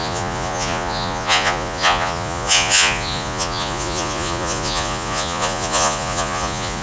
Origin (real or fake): fake